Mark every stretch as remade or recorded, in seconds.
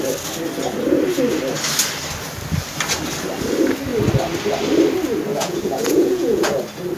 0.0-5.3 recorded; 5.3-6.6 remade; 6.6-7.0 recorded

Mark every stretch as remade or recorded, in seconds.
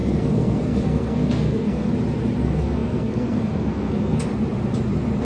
0.0-1.9 remade; 1.9-2.4 recorded; 2.4-4.3 remade; 4.3-5.2 recorded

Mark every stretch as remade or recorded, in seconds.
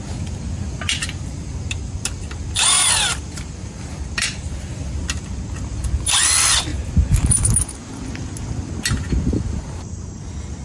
0.0-10.6 recorded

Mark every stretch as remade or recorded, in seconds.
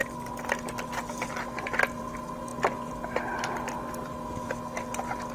0.0-5.3 recorded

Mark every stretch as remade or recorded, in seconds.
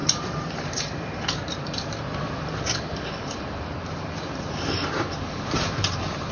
0.0-6.3 remade